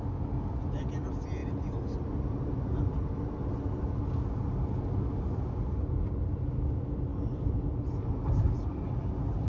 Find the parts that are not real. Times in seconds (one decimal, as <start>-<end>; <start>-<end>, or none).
none